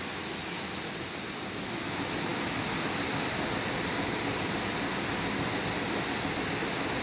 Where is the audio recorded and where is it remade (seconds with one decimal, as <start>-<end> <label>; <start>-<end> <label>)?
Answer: 0.0-7.0 recorded